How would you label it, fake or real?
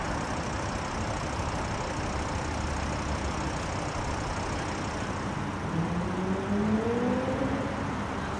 real